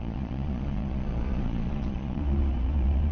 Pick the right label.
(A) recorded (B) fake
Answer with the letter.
B